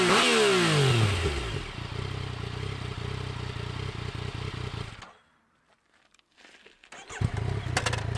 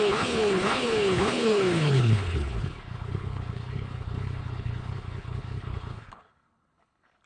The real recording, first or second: first